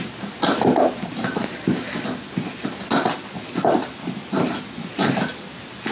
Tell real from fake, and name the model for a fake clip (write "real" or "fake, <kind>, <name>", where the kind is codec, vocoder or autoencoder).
real